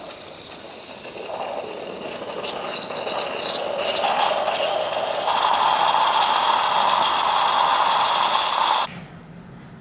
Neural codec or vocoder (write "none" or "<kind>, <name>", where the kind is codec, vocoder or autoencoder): none